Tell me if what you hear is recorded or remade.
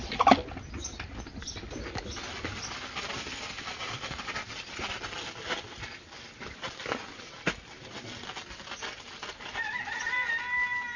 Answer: recorded